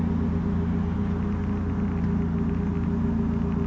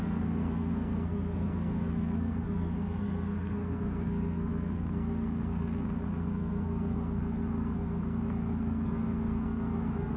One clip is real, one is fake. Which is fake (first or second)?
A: second